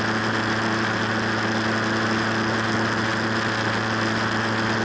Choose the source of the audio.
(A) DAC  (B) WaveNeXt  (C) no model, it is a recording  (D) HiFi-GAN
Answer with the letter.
C